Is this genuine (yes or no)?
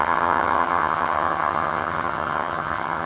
no